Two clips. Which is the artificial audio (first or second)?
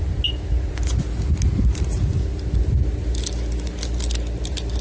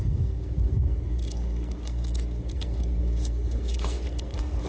second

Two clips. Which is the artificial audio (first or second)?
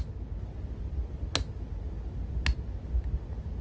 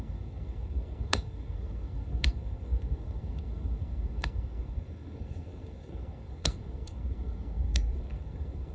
second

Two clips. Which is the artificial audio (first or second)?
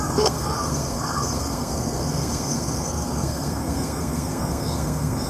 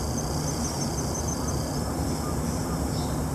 first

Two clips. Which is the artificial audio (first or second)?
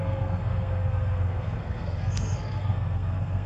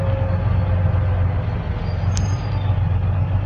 first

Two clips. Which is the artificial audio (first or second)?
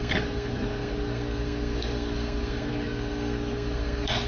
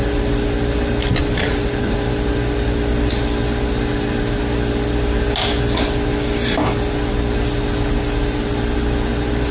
first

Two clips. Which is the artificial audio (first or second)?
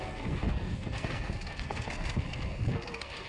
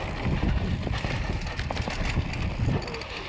first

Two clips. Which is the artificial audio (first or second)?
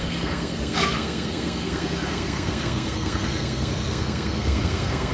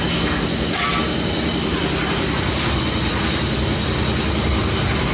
first